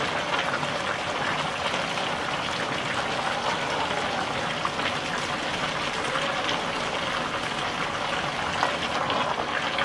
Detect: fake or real real